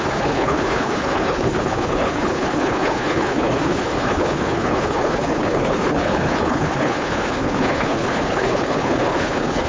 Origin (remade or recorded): remade